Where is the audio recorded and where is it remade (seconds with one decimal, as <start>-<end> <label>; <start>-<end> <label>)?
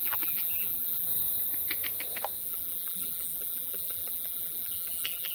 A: 0.0-1.1 remade; 1.1-2.4 recorded; 2.4-5.3 remade